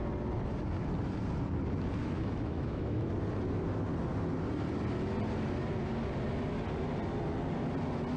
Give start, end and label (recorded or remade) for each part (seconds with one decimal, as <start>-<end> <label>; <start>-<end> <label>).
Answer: 0.0-2.0 recorded; 2.0-3.1 remade; 3.1-8.2 recorded